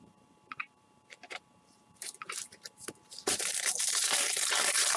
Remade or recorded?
remade